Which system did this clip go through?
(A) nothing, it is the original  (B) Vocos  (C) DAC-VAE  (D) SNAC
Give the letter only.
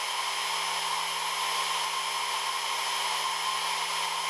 A